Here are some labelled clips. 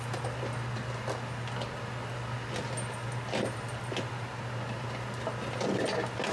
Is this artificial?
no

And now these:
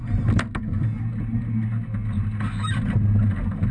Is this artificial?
no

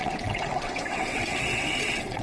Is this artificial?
yes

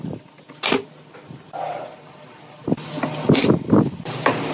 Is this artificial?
no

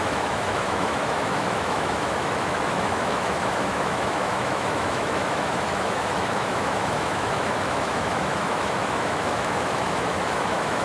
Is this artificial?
yes